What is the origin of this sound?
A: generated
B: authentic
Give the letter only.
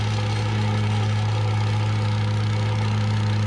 B